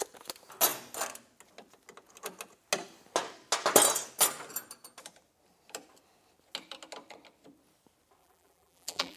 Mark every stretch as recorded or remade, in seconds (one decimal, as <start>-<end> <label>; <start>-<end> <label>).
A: 0.0-8.2 recorded; 8.2-9.2 remade